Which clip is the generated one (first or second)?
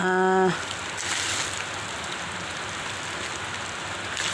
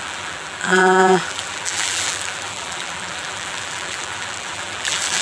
second